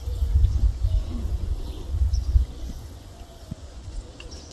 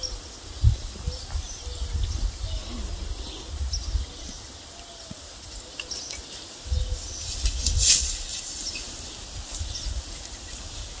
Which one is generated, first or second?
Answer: first